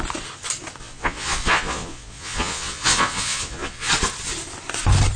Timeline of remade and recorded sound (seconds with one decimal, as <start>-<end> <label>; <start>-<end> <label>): 0.0-0.8 recorded; 0.8-3.9 remade; 3.9-5.2 recorded